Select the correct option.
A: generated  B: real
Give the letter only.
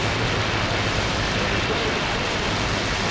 B